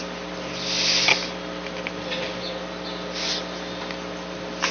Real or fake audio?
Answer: real